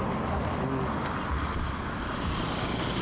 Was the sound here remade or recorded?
recorded